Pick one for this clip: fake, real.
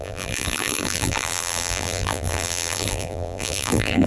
fake